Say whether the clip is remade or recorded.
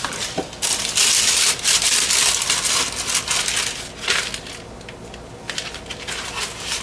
recorded